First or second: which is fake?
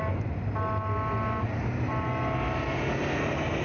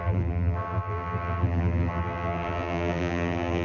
second